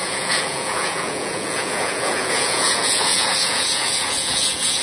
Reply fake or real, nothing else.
fake